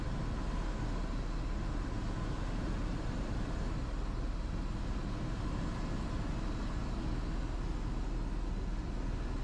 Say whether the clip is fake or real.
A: real